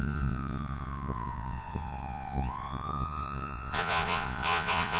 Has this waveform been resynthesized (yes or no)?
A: yes